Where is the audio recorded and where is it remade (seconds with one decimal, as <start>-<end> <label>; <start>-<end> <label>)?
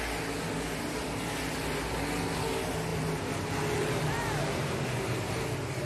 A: 0.0-2.9 recorded; 2.9-4.7 remade; 4.7-5.9 recorded